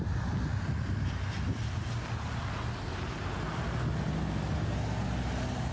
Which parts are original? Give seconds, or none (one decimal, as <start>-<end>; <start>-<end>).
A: 0.0-0.5; 3.3-5.7